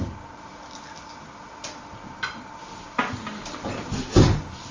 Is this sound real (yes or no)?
yes